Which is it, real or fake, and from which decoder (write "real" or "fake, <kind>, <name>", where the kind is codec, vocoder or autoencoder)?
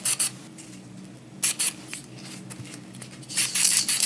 real